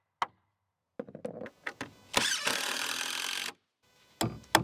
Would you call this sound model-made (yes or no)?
no